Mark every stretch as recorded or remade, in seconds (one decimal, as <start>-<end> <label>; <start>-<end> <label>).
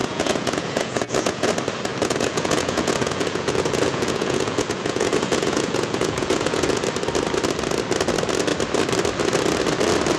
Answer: 0.0-1.5 remade; 1.5-1.9 recorded; 1.9-6.8 remade; 6.8-10.2 recorded